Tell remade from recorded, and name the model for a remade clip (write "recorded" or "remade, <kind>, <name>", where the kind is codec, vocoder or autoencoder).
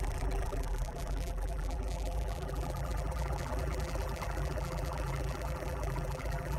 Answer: remade, vocoder, BigVGAN v2